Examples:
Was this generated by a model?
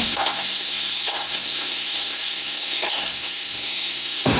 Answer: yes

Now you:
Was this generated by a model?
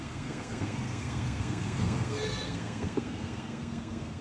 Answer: yes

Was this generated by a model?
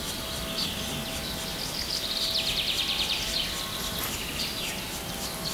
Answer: no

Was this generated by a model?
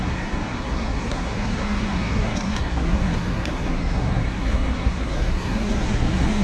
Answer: yes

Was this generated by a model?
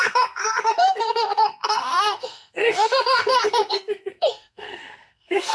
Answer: yes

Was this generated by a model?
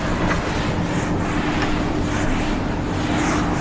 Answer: no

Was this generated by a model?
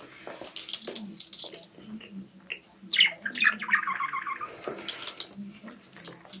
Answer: no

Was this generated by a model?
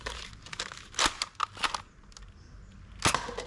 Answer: no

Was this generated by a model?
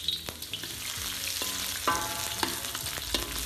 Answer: no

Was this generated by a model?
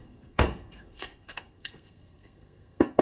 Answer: yes